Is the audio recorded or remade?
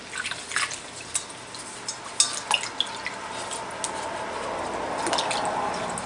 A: recorded